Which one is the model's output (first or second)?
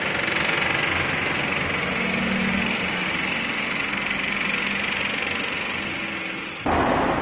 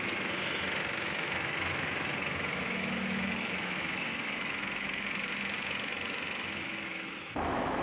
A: second